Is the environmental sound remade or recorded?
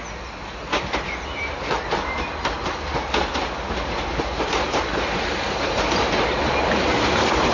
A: recorded